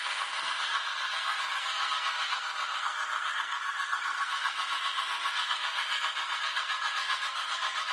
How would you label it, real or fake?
fake